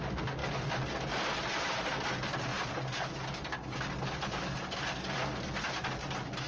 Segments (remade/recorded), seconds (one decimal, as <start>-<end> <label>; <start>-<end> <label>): 0.0-6.5 recorded